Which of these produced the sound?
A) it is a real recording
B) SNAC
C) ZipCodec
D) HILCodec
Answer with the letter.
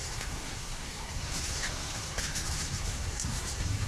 B